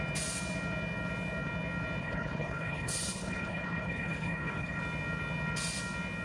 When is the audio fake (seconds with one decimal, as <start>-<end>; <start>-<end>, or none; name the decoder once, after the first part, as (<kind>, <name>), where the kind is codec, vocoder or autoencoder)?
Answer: 2.0-4.8 (codec, HILCodec)